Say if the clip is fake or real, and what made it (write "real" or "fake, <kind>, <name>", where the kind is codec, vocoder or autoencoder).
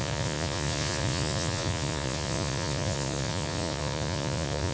fake, vocoder, Vocos